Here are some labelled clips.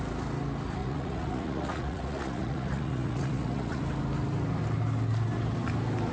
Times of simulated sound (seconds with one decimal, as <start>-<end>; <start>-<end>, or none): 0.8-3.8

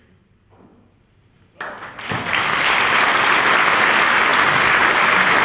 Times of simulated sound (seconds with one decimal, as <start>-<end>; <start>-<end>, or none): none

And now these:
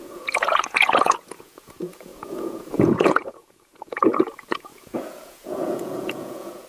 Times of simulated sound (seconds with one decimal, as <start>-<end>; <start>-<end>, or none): 0.0-6.7